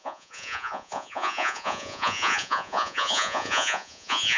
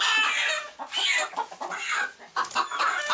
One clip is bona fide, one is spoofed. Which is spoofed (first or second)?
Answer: first